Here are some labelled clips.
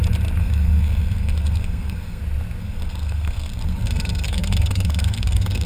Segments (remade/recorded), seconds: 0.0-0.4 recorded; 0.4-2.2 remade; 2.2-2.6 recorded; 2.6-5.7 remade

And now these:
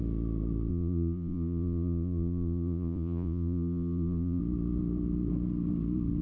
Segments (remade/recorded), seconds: 0.0-0.7 recorded; 0.7-4.4 remade; 4.4-6.2 recorded

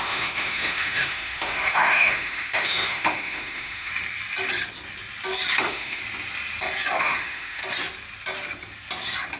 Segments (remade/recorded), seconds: 0.0-3.9 remade; 3.9-5.6 recorded; 5.6-6.0 remade; 6.0-7.0 recorded; 7.0-7.6 remade; 7.6-9.4 recorded